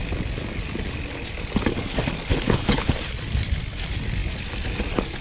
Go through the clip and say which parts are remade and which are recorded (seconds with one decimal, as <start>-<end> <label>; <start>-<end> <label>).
0.0-2.3 recorded; 2.3-2.9 remade; 2.9-5.2 recorded